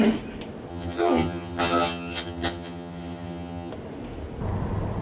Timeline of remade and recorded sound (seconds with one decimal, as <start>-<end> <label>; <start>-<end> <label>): 0.0-0.7 recorded; 0.7-3.7 remade; 3.7-5.0 recorded